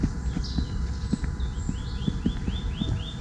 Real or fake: real